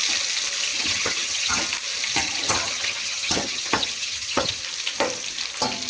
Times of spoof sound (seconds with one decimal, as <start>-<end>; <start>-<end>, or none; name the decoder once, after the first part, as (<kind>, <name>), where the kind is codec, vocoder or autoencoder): 0.7-1.6 (vocoder, HiFi-GAN); 2.2-4.6